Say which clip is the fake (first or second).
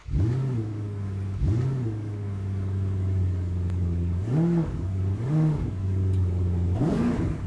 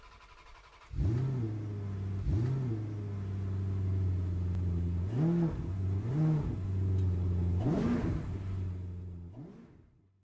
first